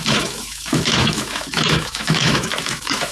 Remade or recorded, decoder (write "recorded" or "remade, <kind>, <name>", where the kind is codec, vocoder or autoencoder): remade, autoencoder, DAC-VAE